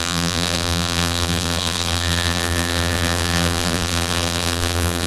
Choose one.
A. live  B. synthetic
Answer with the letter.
B